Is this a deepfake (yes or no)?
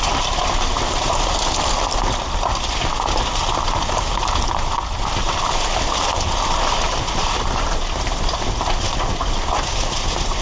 yes